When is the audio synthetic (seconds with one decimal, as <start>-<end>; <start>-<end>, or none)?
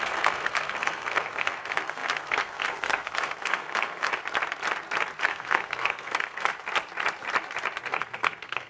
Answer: 0.0-4.1; 5.2-6.5; 7.9-8.7